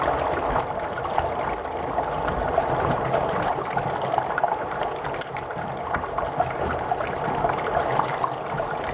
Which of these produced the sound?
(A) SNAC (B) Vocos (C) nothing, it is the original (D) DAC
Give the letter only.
C